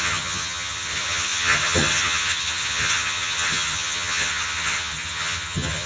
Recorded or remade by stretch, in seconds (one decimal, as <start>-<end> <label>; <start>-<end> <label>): 0.0-5.9 remade